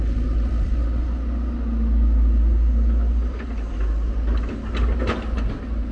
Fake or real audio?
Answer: real